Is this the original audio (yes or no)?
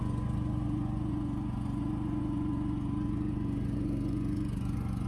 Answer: no